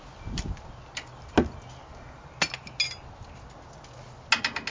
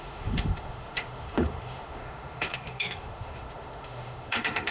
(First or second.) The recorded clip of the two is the first